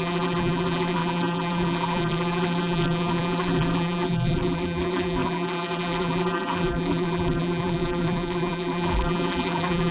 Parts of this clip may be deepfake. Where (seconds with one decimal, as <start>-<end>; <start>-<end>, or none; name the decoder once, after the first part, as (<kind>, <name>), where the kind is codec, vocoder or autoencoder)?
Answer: 0.0-9.9 (vocoder, BigVGAN v2)